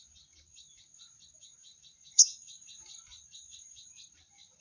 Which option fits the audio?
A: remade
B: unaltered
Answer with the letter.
A